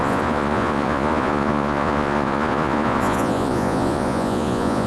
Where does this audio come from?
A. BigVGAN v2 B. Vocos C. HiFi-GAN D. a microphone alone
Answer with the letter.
B